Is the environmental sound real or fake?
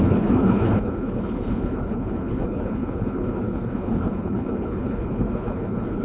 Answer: fake